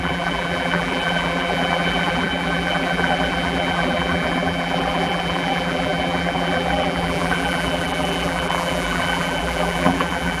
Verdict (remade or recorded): remade